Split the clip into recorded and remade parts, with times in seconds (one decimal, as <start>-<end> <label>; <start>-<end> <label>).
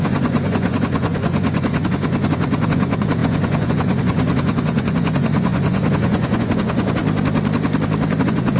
0.0-7.0 remade; 7.0-8.2 recorded; 8.2-8.6 remade